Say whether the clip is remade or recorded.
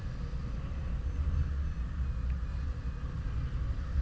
recorded